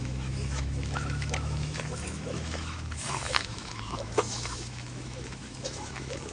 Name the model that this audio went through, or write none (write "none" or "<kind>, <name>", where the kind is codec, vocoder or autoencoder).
autoencoder, DAC-VAE